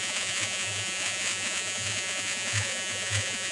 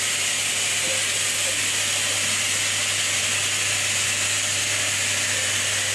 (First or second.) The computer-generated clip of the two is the first